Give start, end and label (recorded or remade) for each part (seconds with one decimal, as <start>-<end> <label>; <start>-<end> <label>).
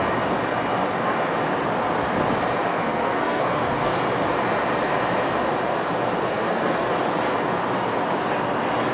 0.0-2.7 recorded; 2.7-4.0 remade; 4.0-6.2 recorded; 6.2-6.9 remade; 6.9-8.9 recorded